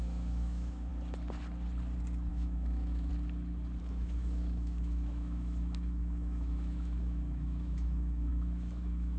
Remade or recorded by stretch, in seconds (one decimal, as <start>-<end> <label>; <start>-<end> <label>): 0.0-0.9 remade; 0.9-2.3 recorded; 2.3-3.1 remade; 3.1-3.8 recorded; 3.8-9.2 remade